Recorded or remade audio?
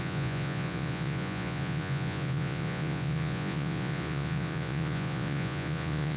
remade